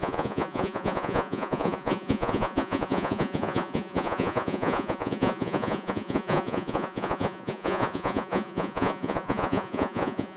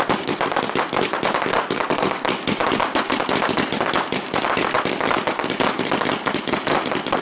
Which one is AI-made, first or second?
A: first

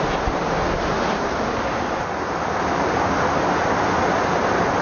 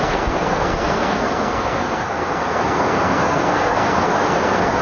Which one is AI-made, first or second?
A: second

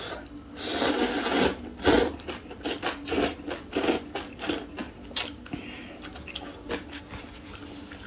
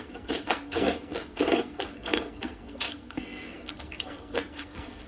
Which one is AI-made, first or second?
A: second